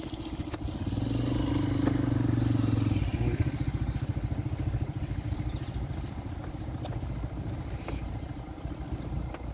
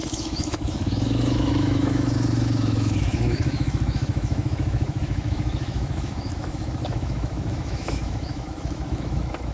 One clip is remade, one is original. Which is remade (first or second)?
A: second